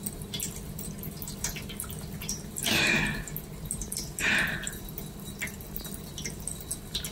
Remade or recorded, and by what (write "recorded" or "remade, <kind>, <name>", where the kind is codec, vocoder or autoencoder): recorded